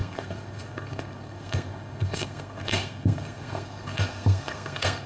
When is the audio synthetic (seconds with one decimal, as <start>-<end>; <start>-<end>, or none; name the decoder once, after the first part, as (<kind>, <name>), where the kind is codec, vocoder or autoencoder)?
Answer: 0.0-5.1 (codec, SNAC)

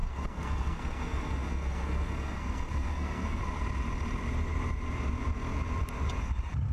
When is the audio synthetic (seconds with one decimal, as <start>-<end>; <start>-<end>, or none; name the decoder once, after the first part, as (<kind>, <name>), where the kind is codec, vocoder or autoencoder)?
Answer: 0.0-3.4 (codec, SNAC)

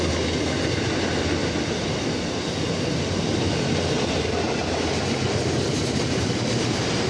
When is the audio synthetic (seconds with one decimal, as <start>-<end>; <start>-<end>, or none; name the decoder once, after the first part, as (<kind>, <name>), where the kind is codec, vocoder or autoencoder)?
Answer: none

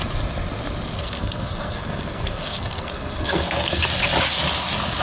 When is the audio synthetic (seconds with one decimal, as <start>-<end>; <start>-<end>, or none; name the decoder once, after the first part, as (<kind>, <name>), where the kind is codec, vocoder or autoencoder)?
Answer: 1.0-3.8 (codec, SNAC)